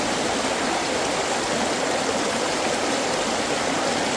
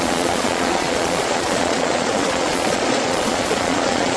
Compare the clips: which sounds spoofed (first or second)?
second